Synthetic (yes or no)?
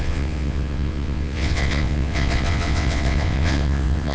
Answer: yes